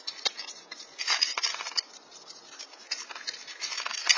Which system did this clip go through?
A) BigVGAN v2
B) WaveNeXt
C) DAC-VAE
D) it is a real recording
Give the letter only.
D